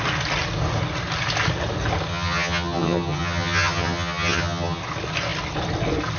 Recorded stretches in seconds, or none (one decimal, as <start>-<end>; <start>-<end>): 0.0-2.1; 4.8-6.2